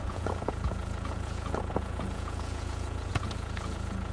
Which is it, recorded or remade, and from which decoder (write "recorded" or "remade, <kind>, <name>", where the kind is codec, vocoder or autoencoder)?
remade, vocoder, Vocos